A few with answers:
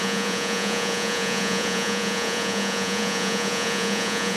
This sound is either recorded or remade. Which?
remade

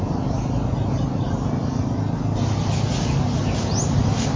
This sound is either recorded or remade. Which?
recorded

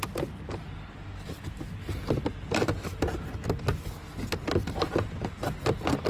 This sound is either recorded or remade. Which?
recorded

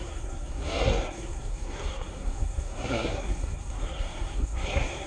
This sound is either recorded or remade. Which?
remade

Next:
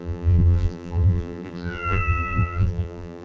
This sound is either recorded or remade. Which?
remade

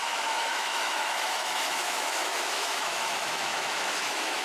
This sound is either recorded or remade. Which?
remade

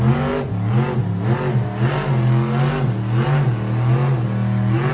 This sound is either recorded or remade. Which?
recorded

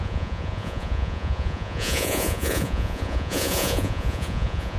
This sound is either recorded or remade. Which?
remade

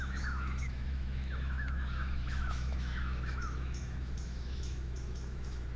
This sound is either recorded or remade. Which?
remade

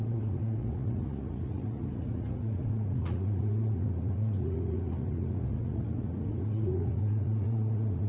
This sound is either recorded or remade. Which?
remade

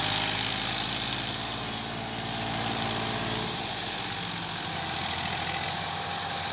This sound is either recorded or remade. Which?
recorded